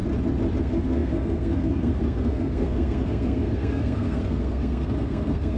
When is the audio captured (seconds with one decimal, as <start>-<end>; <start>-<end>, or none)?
0.0-0.6